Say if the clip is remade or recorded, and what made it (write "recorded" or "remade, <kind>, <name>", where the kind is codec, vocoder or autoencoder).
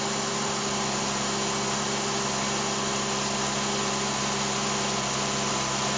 recorded